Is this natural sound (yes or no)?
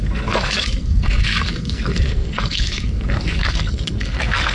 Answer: no